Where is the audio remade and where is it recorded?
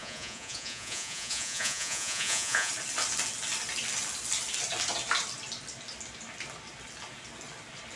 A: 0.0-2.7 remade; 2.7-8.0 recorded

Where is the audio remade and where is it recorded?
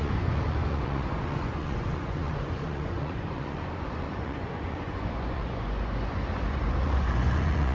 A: 0.0-7.7 remade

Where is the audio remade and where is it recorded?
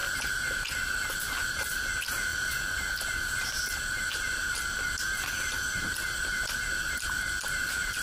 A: 0.0-8.0 recorded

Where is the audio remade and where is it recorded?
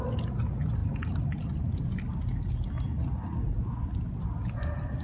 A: 0.0-5.0 recorded